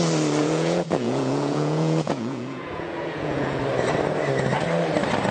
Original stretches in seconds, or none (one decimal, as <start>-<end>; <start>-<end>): 0.0-0.4; 3.6-5.3